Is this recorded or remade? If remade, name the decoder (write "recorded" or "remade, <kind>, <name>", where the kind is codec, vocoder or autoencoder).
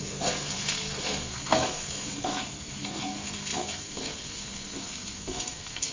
remade, codec, SNAC